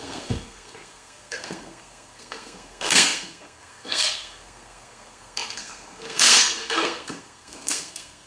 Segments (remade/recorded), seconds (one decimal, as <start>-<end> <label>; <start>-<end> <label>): 0.0-8.3 remade